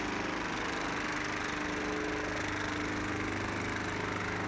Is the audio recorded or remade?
recorded